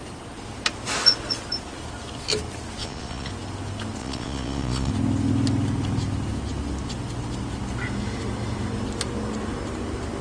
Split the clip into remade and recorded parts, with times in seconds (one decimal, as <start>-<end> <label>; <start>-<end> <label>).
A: 0.0-2.8 recorded; 2.8-3.3 remade; 3.3-4.0 recorded; 4.0-4.9 remade; 4.9-10.2 recorded